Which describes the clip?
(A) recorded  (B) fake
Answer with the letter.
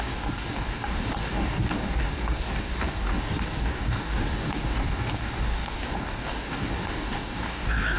B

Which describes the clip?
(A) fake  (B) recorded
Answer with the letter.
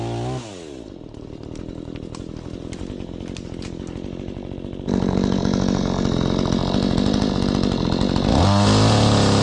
B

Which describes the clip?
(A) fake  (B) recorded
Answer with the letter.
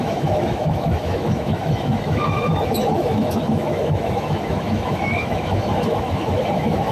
A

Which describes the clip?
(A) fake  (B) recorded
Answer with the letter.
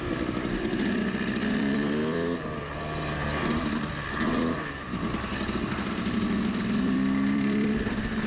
A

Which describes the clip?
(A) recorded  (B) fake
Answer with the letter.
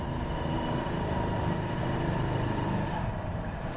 A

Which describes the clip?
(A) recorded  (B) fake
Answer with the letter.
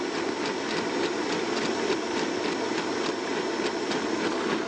A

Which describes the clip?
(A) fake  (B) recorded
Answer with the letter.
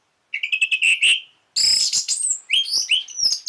B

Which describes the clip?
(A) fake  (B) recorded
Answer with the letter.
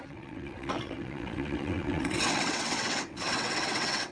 A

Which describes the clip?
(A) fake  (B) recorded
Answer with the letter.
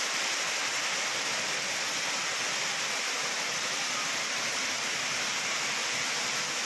B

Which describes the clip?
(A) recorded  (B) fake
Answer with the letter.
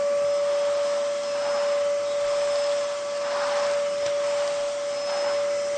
A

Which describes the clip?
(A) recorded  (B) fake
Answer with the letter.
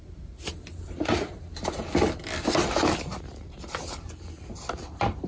A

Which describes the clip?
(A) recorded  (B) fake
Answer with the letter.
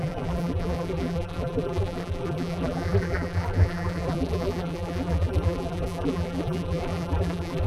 B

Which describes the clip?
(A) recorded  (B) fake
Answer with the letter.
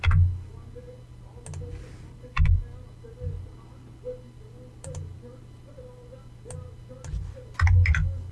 A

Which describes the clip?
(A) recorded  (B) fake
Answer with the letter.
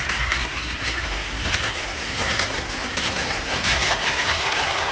B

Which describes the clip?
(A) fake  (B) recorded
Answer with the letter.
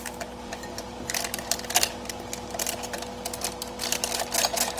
B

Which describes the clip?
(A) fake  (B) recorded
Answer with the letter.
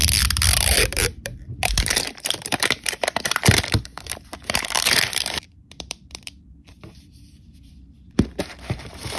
A